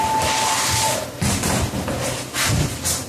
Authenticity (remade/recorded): recorded